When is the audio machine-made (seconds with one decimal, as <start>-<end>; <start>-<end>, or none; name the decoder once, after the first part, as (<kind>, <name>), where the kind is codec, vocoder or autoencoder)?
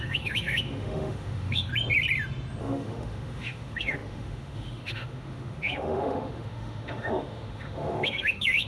0.0-1.7 (autoencoder, DAC-VAE); 2.6-8.7